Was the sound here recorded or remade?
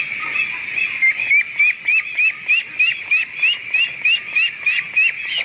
recorded